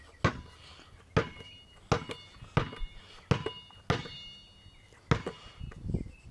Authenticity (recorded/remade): recorded